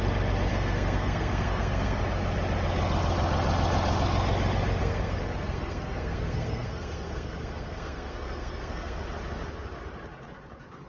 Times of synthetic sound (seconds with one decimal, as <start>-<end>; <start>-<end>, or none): 0.5-2.0; 4.8-9.0